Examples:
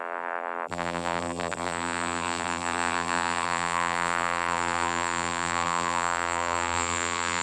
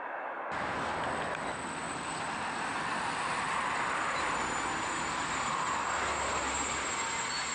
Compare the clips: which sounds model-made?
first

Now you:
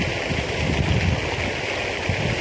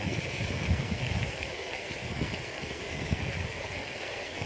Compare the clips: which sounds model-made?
second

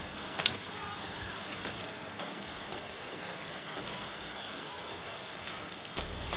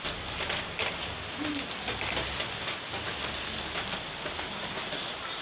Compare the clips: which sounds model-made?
first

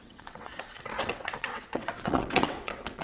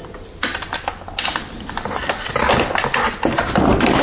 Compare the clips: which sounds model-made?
first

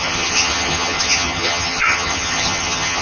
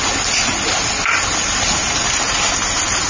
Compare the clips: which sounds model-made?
first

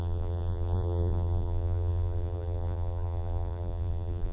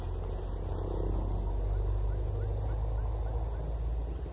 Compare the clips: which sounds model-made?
first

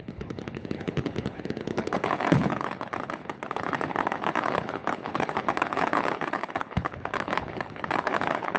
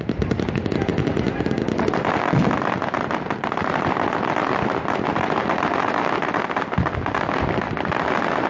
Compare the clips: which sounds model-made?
first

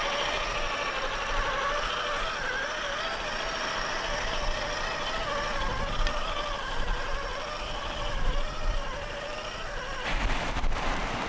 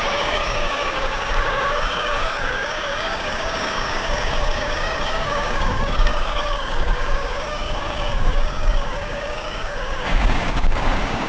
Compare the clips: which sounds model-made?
second